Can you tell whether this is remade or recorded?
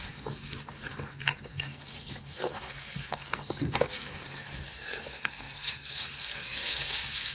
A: remade